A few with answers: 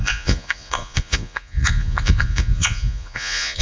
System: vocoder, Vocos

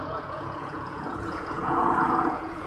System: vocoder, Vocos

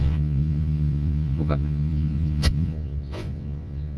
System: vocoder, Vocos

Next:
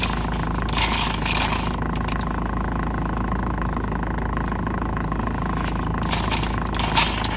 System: none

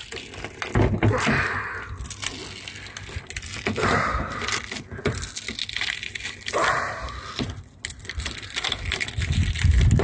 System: none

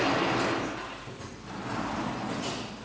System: none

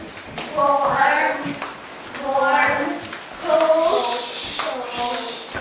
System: none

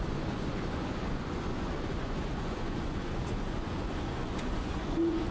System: vocoder, Vocos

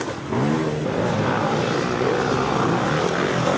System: none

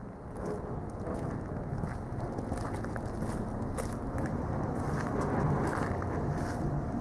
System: none